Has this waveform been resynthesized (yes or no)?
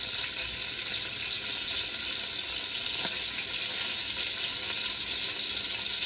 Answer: no